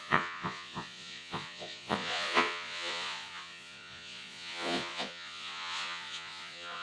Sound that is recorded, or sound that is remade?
remade